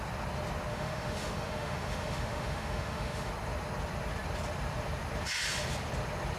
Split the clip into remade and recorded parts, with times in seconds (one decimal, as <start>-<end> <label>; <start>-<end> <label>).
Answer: 0.0-0.7 recorded; 0.7-3.3 remade; 3.3-6.4 recorded